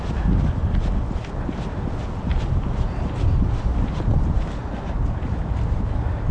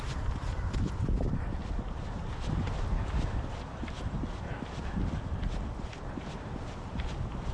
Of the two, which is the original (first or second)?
first